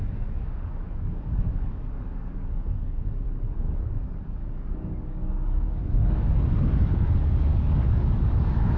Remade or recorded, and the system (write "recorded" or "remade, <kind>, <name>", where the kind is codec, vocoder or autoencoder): remade, codec, DAC